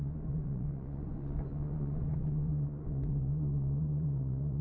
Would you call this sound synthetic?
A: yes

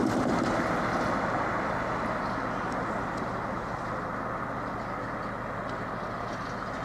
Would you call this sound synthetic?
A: no